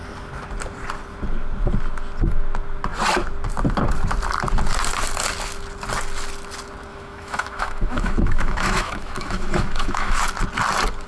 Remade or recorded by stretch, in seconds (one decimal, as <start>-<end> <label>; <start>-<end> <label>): 0.0-6.9 recorded; 6.9-10.2 remade; 10.2-11.1 recorded